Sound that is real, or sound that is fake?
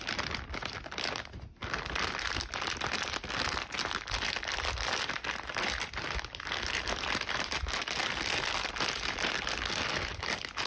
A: real